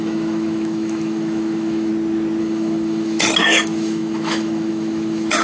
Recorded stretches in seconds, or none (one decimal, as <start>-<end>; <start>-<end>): 1.9-2.4